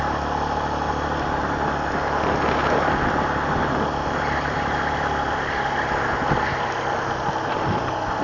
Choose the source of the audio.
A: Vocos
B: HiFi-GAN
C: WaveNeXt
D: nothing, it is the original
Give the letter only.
D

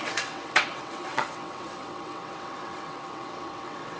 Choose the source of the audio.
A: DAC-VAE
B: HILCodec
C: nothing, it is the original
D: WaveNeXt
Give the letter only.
D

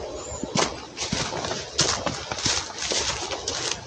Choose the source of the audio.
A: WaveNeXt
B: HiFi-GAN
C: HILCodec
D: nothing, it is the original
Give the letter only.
D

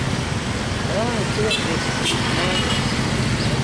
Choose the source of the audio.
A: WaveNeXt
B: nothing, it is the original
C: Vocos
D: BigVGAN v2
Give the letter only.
B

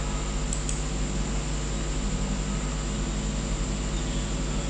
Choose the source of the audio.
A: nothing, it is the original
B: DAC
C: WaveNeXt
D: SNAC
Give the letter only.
A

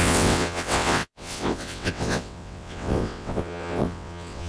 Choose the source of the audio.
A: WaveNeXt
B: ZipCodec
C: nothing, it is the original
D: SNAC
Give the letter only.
A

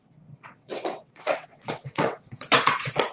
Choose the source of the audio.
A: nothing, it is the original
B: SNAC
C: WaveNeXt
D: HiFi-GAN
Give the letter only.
C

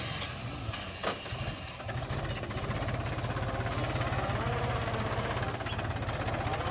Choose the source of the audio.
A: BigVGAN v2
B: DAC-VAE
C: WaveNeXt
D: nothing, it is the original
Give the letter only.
D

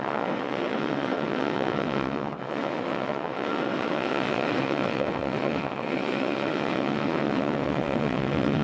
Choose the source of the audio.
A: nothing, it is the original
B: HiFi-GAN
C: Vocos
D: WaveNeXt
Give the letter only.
D